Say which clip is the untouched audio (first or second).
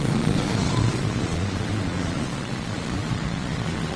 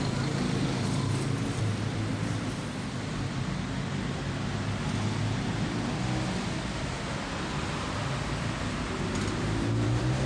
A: second